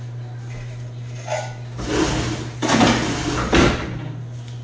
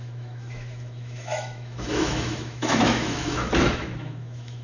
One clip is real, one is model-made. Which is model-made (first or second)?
second